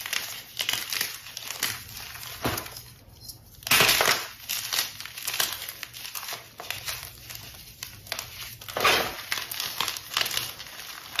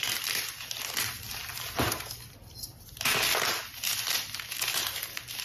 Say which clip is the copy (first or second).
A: second